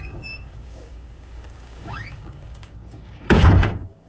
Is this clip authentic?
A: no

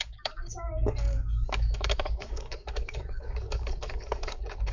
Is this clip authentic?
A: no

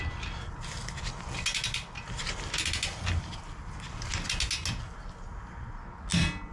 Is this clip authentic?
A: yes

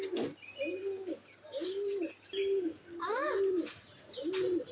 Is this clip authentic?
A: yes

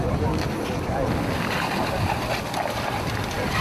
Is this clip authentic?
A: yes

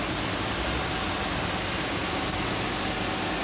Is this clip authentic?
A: yes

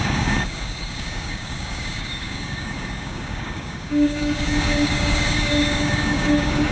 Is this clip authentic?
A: no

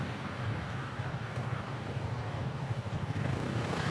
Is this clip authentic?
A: no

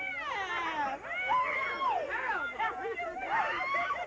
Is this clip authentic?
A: yes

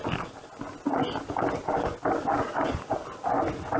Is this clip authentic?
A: yes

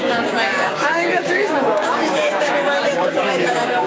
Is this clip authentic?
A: no